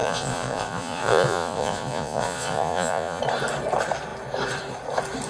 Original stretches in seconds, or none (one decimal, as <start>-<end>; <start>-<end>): 3.2-5.3